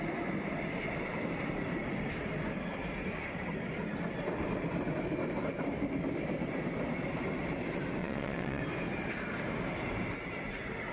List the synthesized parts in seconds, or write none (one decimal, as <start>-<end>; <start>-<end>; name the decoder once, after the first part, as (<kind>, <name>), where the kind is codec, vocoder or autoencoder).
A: 8.0-8.6 (vocoder, Vocos)